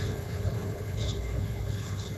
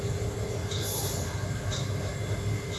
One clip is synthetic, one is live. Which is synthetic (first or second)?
first